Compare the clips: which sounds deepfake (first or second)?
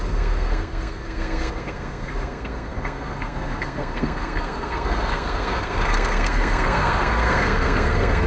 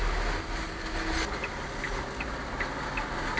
first